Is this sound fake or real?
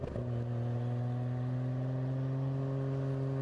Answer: real